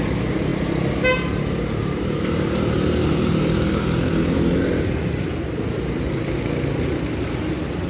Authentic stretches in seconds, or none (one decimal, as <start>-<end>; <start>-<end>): 0.0-7.9